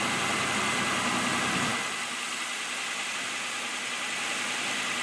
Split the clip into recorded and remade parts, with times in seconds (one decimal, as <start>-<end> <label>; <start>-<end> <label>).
0.0-5.0 recorded